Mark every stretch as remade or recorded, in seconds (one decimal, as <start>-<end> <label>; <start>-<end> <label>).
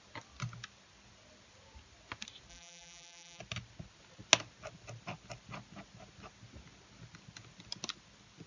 0.0-2.5 recorded; 2.5-3.4 remade; 3.4-8.5 recorded